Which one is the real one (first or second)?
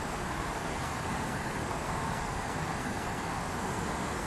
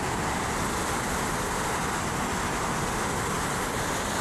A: second